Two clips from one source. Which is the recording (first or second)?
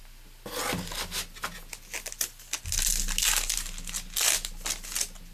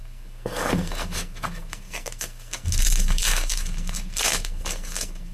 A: first